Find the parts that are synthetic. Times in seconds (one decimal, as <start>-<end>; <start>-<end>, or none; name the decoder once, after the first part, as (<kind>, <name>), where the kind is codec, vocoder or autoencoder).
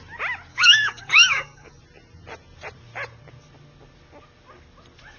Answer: 0.5-1.8 (codec, DAC)